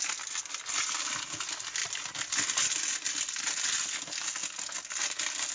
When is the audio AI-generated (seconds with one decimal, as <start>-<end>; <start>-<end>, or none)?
none